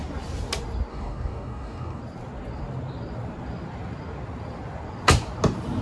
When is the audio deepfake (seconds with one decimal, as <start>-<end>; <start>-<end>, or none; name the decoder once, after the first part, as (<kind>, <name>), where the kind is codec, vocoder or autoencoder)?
0.9-2.0 (codec, DAC)